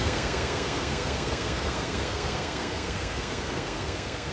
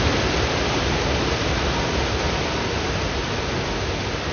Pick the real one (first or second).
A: second